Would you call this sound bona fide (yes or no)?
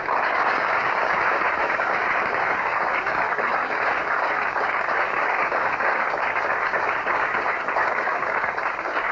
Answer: no